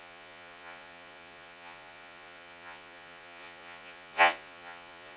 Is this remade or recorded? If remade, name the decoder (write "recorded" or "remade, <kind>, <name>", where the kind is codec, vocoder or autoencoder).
remade, vocoder, Vocos